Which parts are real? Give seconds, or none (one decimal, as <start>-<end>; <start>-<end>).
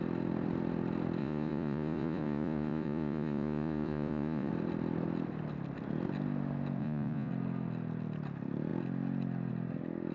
0.0-1.2; 4.5-6.8; 7.3-10.1